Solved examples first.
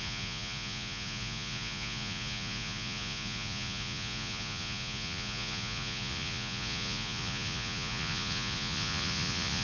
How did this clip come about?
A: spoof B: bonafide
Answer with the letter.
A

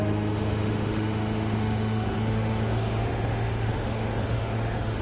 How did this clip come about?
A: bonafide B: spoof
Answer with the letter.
B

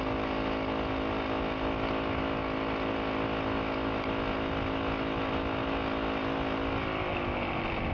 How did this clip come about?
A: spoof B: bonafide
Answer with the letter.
B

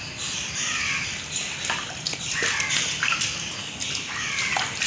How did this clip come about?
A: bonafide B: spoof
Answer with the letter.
B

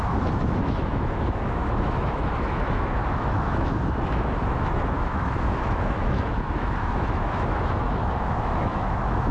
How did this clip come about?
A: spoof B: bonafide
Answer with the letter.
A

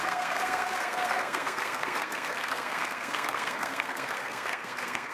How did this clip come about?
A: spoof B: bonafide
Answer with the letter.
A